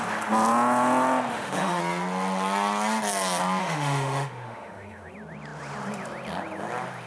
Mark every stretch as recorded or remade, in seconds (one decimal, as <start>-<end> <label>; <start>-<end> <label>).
0.0-1.3 recorded; 1.3-1.8 remade; 1.8-3.6 recorded; 3.6-5.1 remade; 5.1-7.1 recorded

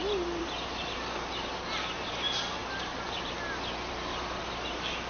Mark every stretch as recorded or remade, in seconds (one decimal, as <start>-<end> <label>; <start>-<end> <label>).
0.0-5.1 recorded